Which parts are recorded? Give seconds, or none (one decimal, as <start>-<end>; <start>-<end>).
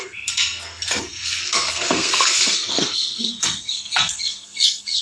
none